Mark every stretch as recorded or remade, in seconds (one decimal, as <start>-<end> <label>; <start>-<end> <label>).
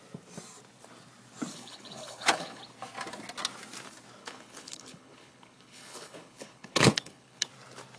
0.0-1.5 recorded; 1.5-2.6 remade; 2.6-4.2 recorded; 4.2-7.5 remade; 7.5-8.0 recorded